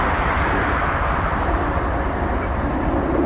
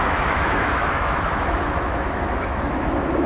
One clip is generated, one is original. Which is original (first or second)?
first